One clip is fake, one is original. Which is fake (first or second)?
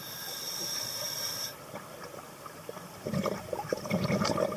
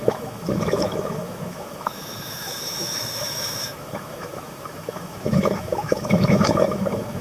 second